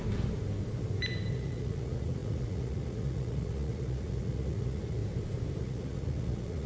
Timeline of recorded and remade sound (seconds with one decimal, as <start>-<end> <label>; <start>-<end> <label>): 0.0-1.3 recorded; 1.3-5.0 remade; 5.0-5.6 recorded; 5.6-6.7 remade